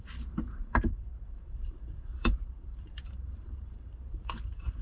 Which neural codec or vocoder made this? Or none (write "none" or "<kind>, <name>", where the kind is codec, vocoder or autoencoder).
vocoder, BigVGAN v2